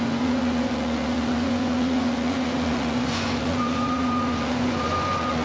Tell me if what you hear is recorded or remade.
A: remade